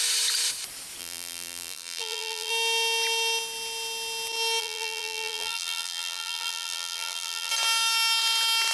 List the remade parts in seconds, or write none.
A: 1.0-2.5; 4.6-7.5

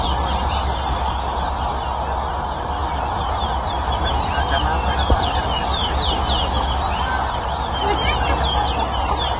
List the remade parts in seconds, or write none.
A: 2.8-7.0

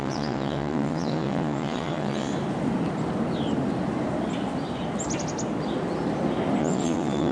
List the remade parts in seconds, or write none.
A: 0.0-2.3; 6.6-7.3

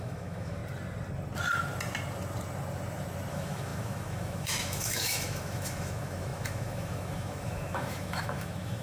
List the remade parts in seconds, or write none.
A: 0.0-0.6; 3.3-8.8

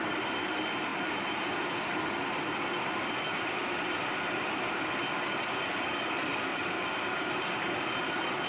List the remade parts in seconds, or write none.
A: 0.9-3.7; 6.5-7.3